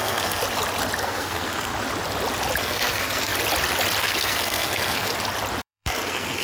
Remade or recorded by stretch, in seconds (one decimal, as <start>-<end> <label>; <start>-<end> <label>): 0.0-0.4 remade; 0.4-1.0 recorded; 1.0-1.7 remade; 1.7-2.6 recorded; 2.6-3.3 remade; 3.3-4.0 recorded; 4.0-5.1 remade; 5.1-5.6 recorded; 5.6-6.4 remade